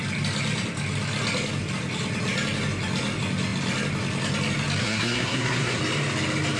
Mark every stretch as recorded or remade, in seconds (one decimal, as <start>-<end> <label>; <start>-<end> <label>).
0.0-4.8 recorded; 4.8-5.8 remade; 5.8-6.6 recorded